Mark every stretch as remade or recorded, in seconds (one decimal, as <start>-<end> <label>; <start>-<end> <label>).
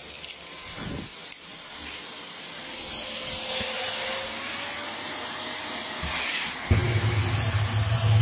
0.0-8.2 recorded